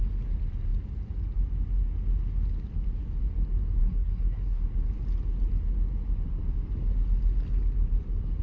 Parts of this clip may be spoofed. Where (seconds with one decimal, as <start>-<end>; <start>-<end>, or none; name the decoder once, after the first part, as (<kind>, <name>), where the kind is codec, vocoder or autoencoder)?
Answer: 3.8-4.6 (codec, SNAC)